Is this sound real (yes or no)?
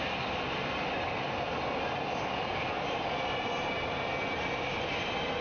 yes